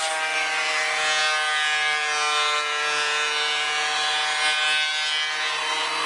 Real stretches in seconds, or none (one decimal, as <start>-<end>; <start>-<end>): 0.0-6.1